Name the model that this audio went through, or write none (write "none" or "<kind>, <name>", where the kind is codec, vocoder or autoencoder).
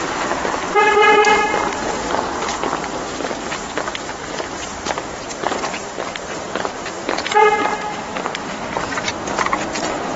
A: vocoder, BigVGAN v2